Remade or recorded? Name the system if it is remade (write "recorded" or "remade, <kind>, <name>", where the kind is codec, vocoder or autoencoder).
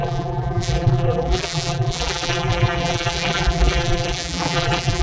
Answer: remade, vocoder, BigVGAN v2